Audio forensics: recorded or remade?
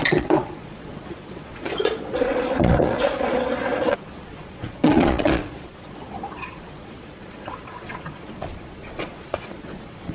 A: remade